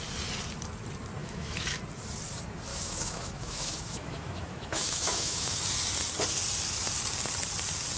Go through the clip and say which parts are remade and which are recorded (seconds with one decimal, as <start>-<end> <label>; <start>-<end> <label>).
0.0-1.2 recorded; 1.2-1.8 remade; 1.8-2.7 recorded; 2.7-5.6 remade; 5.6-8.0 recorded